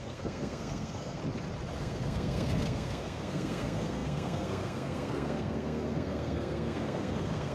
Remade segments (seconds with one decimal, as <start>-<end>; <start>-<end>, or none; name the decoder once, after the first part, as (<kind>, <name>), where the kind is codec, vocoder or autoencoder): 0.0-1.2 (codec, SNAC); 1.8-7.5